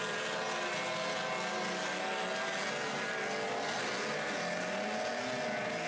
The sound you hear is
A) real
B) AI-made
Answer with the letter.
A